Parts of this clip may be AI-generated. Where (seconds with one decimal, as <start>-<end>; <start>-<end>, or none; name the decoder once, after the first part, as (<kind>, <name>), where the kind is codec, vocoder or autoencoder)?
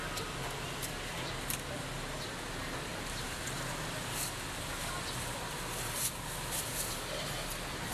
none